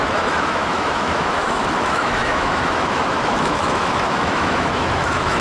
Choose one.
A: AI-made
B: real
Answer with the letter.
A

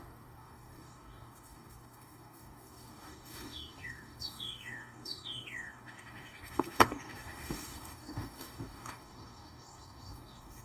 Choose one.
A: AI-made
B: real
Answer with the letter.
A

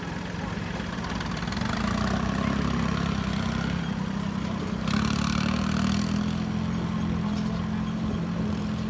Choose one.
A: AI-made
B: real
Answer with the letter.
B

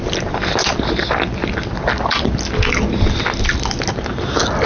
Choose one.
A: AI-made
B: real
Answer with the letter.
B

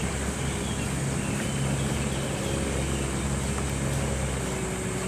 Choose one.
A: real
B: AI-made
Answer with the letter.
A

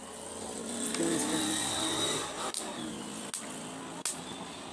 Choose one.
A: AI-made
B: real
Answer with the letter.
B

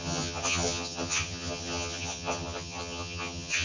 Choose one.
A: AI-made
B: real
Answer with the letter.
A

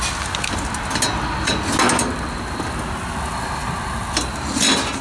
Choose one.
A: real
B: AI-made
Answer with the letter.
A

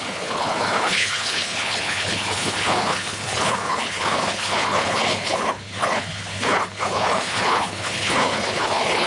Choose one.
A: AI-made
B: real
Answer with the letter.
A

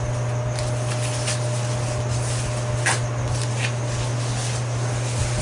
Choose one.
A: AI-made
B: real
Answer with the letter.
B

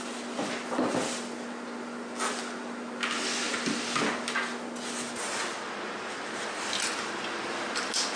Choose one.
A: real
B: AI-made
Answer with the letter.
A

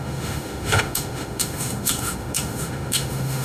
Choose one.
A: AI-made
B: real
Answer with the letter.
A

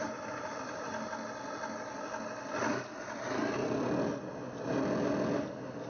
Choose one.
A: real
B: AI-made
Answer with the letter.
A